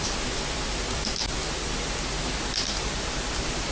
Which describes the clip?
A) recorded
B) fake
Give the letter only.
A